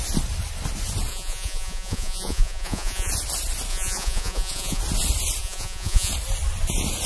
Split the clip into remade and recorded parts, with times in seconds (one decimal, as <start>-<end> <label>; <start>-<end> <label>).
0.0-1.1 recorded; 1.1-3.1 remade; 3.1-3.7 recorded; 3.7-4.8 remade; 4.8-5.4 recorded; 5.4-6.1 remade; 6.1-7.1 recorded